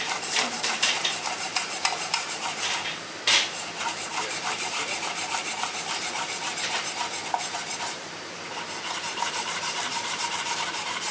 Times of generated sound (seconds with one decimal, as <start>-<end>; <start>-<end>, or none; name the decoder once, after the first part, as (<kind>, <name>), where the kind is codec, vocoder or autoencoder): 0.0-7.2 (vocoder, BigVGAN v2); 7.8-11.1